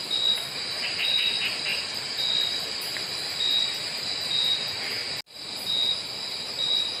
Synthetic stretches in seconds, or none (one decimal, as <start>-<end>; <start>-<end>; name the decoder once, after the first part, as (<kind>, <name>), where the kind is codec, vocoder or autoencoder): none